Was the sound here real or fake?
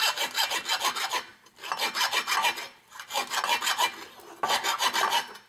real